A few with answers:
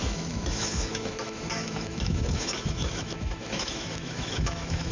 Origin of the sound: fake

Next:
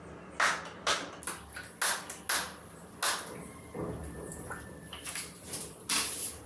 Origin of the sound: real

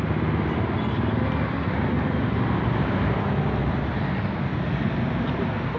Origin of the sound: real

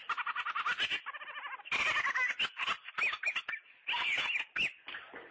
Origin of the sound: real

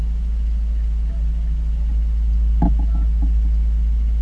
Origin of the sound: real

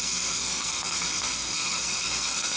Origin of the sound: fake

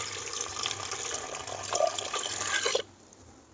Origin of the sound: real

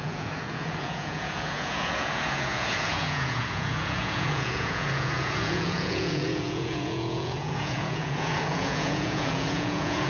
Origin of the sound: fake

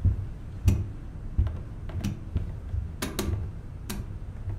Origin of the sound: real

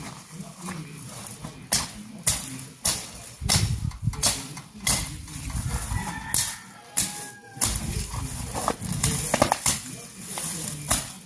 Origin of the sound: real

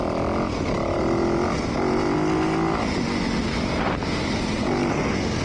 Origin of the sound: real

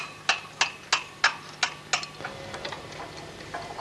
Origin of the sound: real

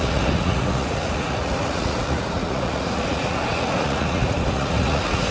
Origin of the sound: fake